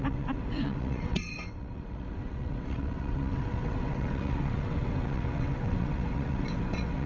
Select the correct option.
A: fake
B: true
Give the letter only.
A